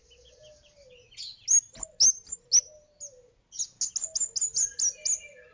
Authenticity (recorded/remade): recorded